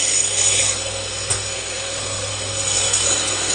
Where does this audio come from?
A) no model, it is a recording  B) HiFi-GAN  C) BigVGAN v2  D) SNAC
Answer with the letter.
D